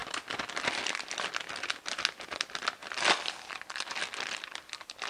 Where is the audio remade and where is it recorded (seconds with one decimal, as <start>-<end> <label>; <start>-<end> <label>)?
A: 0.0-2.8 recorded; 2.8-5.1 remade